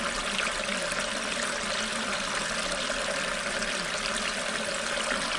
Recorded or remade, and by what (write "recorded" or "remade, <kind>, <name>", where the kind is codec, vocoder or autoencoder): recorded